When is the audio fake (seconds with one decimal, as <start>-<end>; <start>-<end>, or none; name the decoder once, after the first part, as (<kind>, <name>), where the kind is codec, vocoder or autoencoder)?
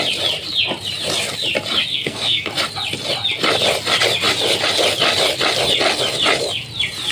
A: 1.9-2.5 (codec, SNAC)